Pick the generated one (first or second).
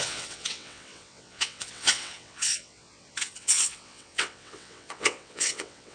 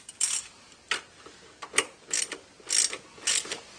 first